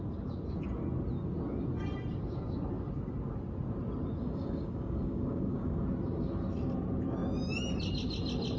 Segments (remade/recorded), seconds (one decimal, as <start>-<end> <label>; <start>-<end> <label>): 0.0-4.2 recorded; 4.2-5.8 remade; 5.8-8.6 recorded